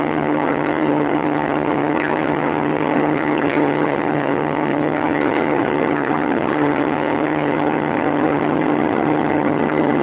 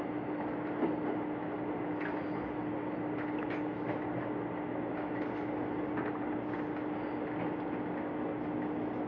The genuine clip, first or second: second